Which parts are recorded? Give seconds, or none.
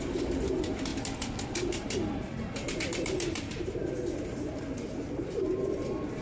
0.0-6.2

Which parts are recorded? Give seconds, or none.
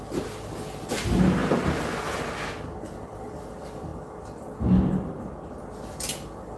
0.0-6.6